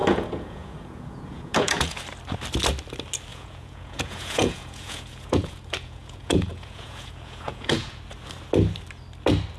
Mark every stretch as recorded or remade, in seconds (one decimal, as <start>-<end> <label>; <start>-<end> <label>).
0.0-2.0 remade; 2.0-3.3 recorded; 3.3-8.0 remade; 8.0-9.6 recorded